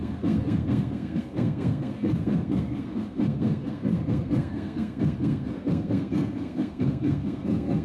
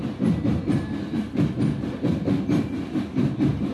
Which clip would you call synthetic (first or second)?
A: first